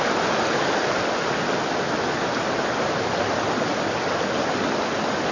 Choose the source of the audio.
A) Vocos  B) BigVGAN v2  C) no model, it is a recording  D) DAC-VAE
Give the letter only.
C